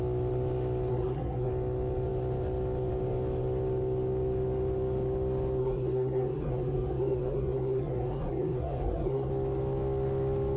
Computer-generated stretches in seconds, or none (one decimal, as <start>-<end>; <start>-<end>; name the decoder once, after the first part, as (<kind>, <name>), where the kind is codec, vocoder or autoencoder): 0.9-1.5 (codec, SNAC); 5.6-9.3